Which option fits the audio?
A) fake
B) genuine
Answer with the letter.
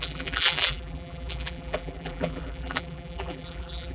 A